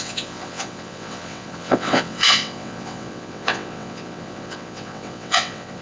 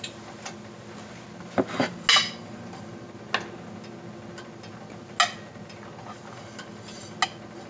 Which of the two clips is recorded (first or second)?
second